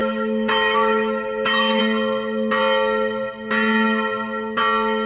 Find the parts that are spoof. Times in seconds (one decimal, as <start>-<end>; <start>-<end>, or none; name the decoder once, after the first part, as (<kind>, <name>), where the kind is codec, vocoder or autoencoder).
0.0-1.8 (autoencoder, DAC-VAE)